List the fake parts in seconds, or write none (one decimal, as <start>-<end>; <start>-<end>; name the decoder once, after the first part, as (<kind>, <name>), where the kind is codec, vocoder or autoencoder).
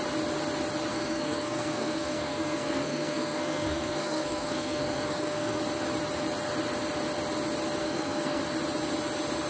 0.9-5.6 (codec, SNAC); 7.8-8.4